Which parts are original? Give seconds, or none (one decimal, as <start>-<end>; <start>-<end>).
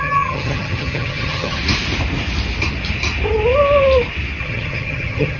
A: 1.6-4.4